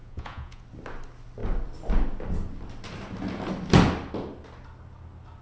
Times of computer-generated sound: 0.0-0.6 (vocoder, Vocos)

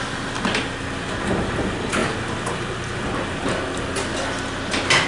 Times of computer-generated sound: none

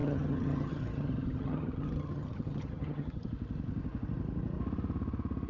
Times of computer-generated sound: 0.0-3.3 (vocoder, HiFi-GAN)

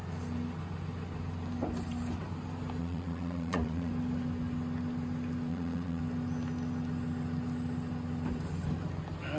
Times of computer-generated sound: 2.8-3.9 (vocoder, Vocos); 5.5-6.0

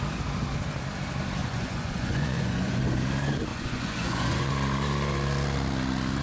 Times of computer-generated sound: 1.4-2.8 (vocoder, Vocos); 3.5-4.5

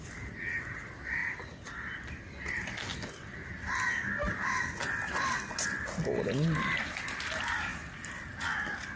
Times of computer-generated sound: none